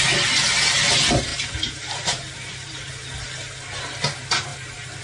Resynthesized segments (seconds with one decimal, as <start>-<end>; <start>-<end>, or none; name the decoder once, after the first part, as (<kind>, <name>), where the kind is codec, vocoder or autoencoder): 1.3-2.9 (vocoder, BigVGAN v2); 4.5-5.0